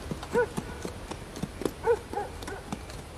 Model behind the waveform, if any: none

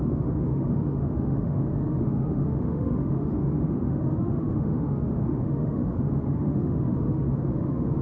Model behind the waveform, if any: autoencoder, DAC-VAE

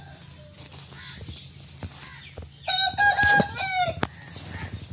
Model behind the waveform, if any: none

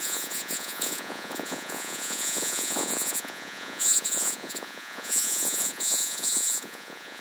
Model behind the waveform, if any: vocoder, Vocos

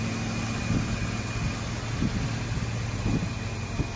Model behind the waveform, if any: none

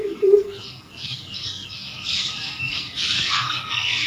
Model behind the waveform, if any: codec, SNAC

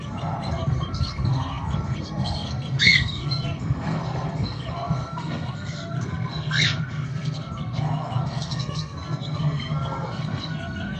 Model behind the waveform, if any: codec, SNAC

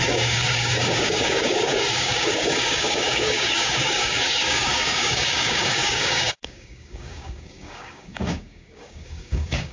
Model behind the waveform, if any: codec, DAC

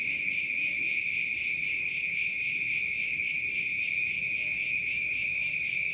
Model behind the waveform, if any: autoencoder, DAC-VAE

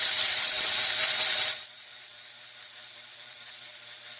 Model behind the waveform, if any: vocoder, BigVGAN v2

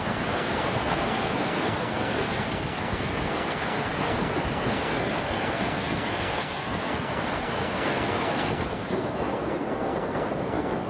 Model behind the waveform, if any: codec, SNAC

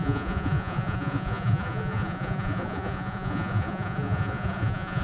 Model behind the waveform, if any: vocoder, Vocos